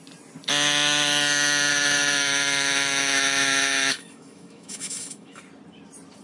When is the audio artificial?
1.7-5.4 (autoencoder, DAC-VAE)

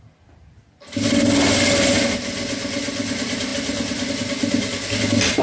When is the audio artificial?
none

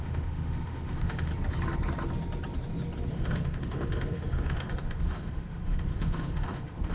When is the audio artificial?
0.0-1.3 (autoencoder, DAC-VAE); 3.1-6.9

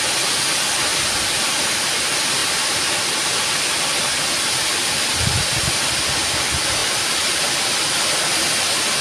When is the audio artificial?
none

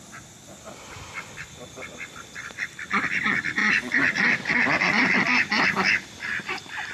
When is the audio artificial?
none